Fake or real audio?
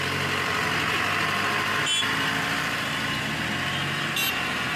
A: real